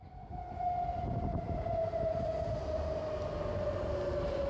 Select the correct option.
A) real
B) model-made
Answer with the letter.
A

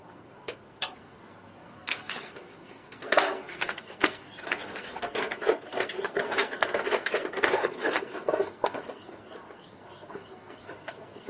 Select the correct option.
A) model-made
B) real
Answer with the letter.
A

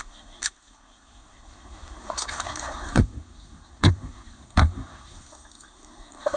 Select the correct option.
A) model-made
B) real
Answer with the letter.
A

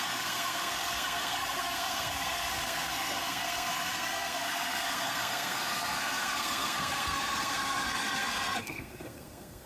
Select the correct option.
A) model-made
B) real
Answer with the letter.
A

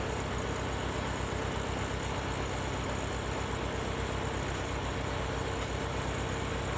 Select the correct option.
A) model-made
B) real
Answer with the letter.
B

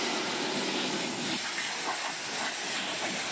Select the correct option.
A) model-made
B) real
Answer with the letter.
B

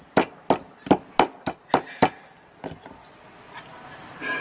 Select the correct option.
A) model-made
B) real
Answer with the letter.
B